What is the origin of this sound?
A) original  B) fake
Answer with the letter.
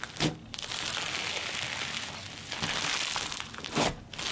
A